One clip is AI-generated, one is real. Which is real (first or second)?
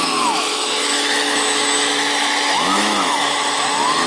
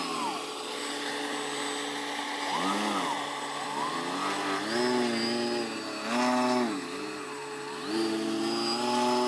second